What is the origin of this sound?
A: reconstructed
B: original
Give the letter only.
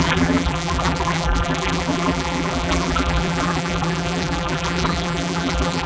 A